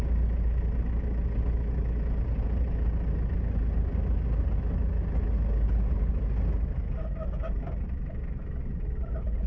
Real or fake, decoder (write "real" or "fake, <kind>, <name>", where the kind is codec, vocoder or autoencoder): real